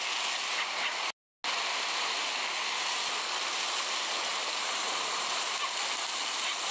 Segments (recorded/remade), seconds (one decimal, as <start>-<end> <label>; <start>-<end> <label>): 0.0-4.3 recorded; 4.3-5.5 remade; 5.5-6.7 recorded